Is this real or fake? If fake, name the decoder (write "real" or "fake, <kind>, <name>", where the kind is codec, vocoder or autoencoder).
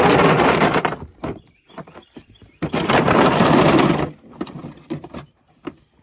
fake, vocoder, BigVGAN v2